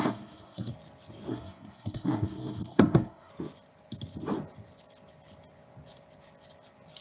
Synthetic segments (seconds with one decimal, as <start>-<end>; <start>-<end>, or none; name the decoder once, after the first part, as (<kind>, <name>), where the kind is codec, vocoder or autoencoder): 0.0-0.7 (codec, SNAC); 1.3-3.3